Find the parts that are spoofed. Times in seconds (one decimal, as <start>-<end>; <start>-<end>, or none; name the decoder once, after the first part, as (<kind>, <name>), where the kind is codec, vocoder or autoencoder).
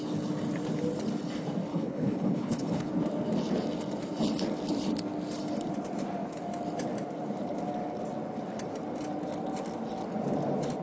1.7-2.9 (codec, HILCodec)